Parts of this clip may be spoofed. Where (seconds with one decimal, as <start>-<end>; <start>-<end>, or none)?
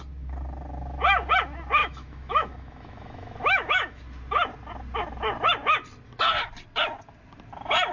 1.8-4.0